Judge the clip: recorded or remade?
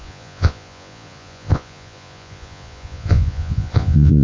remade